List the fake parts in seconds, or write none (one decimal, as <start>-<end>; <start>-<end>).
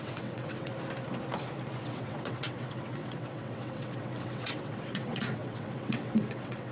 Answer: 0.0-0.7; 1.8-6.7